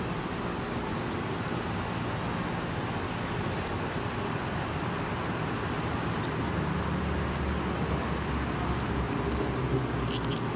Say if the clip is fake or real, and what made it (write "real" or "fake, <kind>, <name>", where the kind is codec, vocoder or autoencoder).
real